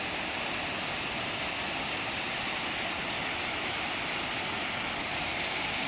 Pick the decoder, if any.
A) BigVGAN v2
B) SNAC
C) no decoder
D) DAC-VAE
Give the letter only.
C